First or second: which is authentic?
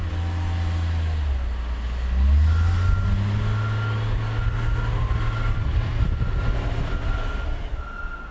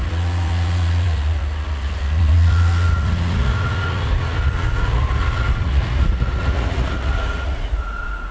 first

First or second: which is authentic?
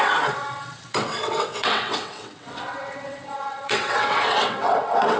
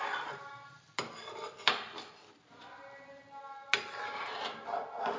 second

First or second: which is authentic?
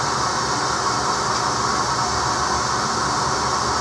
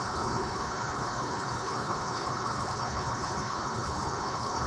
first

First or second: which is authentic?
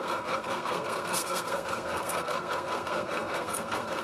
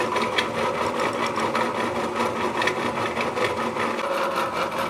second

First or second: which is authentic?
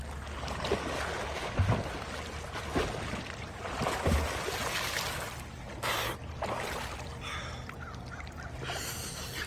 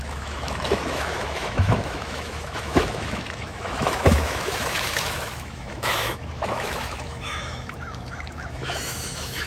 first